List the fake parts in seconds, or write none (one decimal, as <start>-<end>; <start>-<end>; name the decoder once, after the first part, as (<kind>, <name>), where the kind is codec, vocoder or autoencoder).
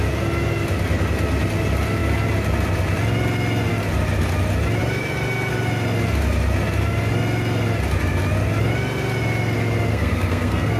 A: 9.9-10.8 (codec, SNAC)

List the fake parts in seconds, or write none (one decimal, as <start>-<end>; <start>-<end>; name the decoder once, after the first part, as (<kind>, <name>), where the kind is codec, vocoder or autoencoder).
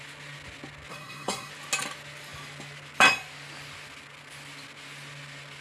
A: 0.9-1.5 (codec, SNAC)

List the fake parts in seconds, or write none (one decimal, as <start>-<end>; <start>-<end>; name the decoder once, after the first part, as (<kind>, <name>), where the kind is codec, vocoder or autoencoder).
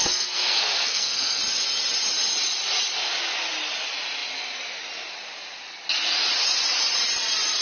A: 0.0-1.4 (codec, SNAC)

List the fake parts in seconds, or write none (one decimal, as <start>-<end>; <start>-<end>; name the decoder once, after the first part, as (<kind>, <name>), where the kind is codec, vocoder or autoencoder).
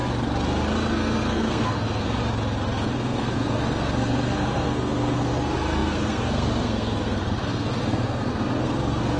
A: 0.9-2.2 (codec, SNAC); 2.9-9.2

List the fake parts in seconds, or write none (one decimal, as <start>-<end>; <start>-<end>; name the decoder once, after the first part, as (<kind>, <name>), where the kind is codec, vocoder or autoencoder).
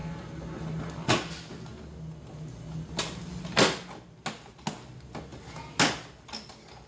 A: none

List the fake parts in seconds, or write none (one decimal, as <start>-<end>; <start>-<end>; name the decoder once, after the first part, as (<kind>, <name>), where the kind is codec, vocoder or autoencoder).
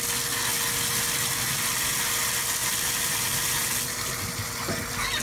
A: none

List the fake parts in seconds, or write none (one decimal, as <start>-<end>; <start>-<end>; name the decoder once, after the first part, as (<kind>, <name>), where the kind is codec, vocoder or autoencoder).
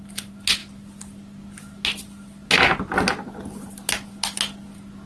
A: none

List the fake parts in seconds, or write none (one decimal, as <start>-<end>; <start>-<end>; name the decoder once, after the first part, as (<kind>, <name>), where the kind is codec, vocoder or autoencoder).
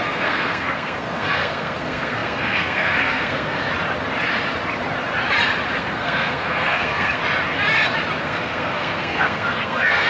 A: 0.0-3.6 (codec, SNAC); 5.8-7.2; 8.2-10.1